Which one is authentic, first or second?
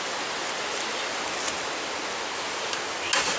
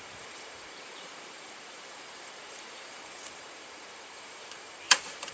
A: first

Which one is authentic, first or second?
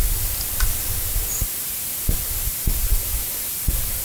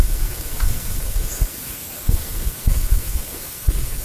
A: first